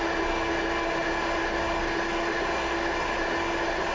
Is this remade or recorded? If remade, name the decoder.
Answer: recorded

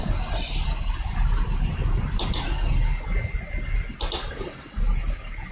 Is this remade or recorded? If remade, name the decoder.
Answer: recorded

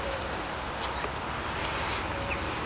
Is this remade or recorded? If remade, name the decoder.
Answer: recorded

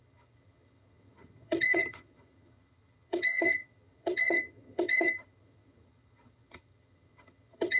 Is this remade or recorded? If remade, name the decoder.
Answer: remade, vocoder, HiFi-GAN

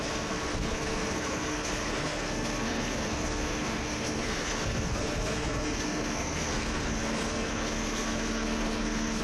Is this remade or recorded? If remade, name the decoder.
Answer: remade, codec, SNAC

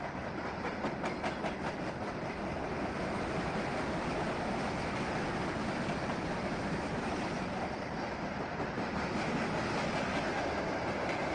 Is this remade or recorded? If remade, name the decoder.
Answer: recorded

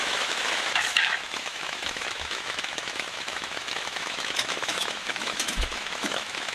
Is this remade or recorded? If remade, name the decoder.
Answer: remade, autoencoder, DAC-VAE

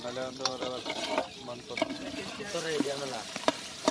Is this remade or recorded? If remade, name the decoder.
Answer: remade, vocoder, BigVGAN v2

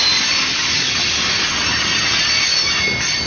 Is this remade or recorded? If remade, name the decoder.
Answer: recorded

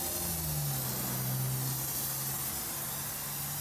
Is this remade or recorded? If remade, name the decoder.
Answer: recorded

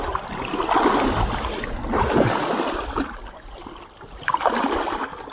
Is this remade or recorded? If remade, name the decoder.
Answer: recorded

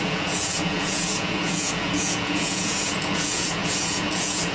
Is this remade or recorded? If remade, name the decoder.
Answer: remade, vocoder, Vocos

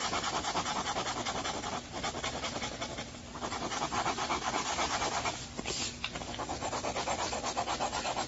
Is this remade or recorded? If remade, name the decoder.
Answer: recorded